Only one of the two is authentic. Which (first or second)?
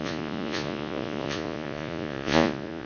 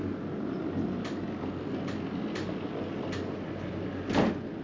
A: second